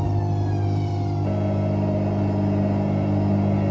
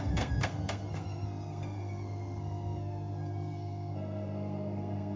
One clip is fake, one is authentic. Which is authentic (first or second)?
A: first